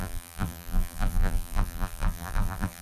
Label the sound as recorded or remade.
remade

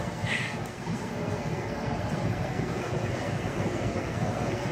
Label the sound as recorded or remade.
remade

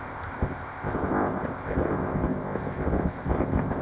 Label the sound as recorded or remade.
remade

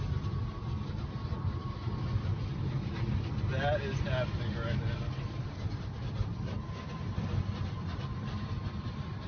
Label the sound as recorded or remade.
recorded